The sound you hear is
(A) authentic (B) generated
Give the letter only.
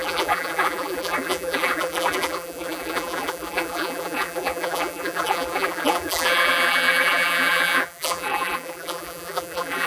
B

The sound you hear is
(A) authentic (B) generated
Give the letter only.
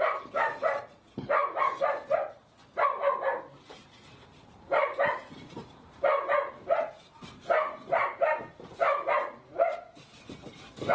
A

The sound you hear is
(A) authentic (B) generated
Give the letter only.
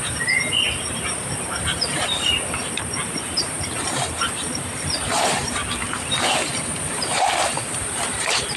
B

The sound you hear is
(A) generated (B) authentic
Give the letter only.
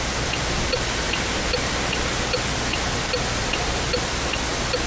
B